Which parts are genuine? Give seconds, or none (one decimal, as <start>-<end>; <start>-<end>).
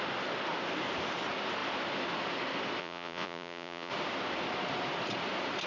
0.0-2.8; 3.9-5.7